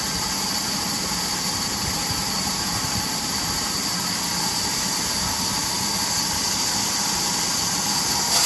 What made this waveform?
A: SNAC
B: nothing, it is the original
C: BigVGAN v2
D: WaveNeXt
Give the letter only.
C